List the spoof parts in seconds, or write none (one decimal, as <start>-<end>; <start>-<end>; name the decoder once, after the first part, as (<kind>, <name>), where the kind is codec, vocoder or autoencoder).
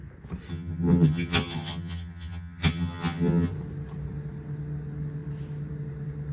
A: 0.5-3.5 (vocoder, HiFi-GAN)